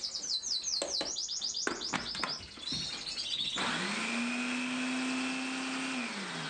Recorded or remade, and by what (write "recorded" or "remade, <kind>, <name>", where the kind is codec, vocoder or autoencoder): recorded